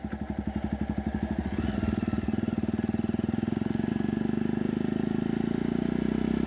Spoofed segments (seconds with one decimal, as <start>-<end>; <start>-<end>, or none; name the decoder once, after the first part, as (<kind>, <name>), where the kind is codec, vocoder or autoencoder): none